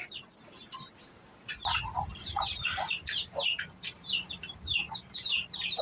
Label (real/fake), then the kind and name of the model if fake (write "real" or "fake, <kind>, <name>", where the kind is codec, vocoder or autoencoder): fake, vocoder, BigVGAN v2